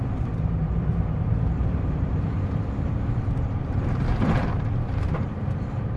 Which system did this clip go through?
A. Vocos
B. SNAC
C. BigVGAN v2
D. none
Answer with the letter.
C